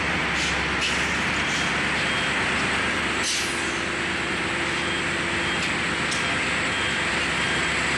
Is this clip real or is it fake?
real